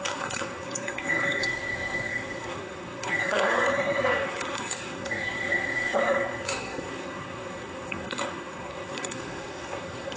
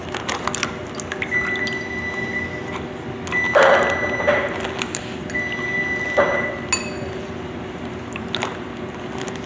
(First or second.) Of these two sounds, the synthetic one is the first